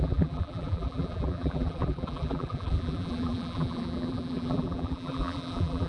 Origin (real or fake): fake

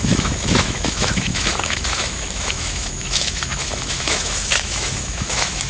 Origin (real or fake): fake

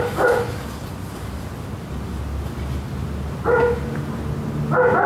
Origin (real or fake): real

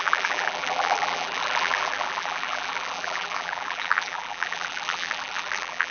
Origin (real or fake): fake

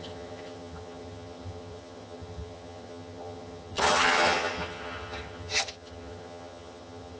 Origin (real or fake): fake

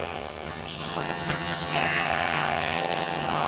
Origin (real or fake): fake